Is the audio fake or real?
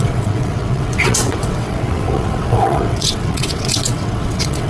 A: fake